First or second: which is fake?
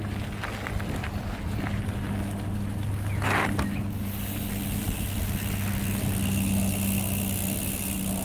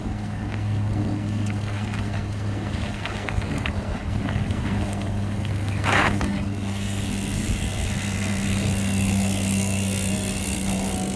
second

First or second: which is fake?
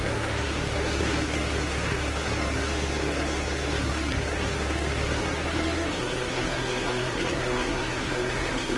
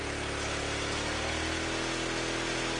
first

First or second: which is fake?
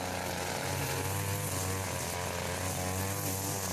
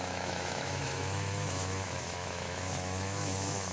second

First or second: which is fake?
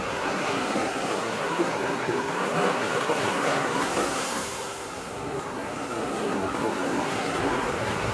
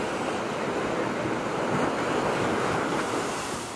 first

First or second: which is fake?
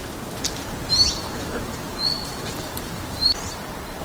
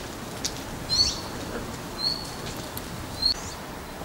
first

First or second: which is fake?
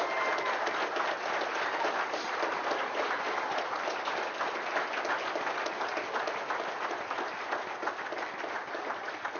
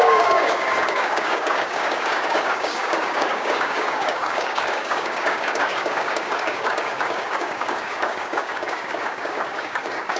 second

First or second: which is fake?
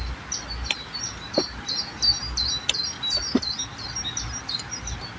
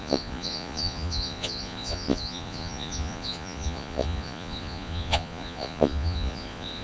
second